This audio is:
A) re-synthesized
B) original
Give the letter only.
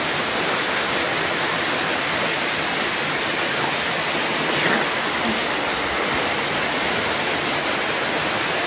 B